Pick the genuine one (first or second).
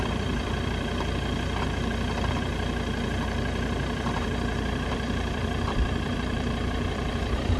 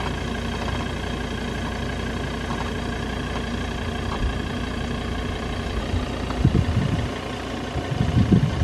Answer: second